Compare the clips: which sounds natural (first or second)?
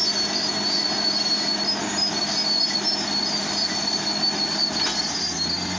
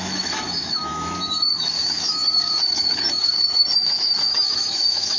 first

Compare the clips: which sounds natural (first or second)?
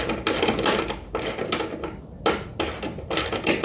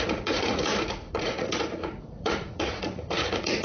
first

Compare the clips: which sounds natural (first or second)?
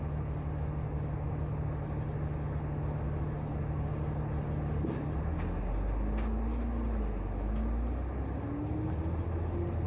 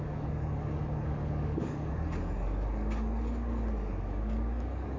first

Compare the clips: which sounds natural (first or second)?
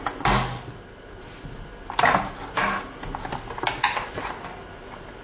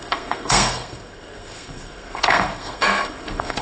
first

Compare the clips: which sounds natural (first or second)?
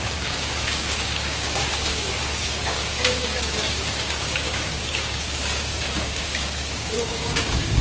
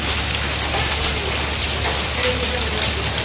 second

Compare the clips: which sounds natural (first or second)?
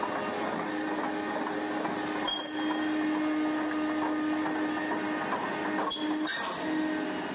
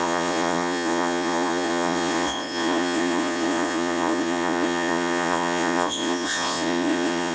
first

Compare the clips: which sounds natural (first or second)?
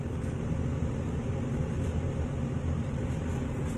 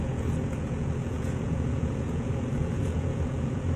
first